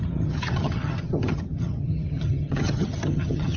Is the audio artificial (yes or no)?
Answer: yes